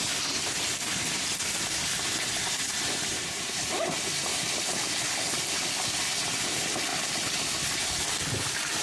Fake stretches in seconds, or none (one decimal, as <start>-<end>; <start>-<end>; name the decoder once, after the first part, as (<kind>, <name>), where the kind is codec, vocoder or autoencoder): 3.1-3.7 (vocoder, BigVGAN v2); 4.3-4.9; 6.9-8.1